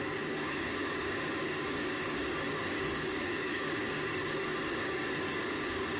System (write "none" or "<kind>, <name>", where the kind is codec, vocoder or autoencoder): codec, DAC